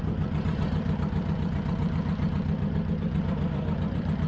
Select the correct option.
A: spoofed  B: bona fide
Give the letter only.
A